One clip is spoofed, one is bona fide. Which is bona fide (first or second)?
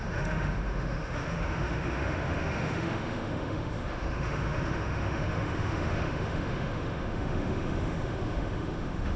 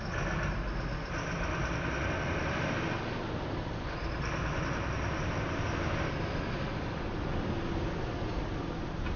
second